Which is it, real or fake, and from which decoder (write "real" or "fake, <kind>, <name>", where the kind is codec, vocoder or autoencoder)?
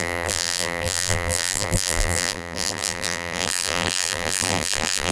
fake, vocoder, BigVGAN v2